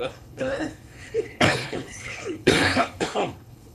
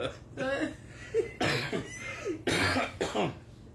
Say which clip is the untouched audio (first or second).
second